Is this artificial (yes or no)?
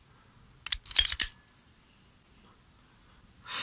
no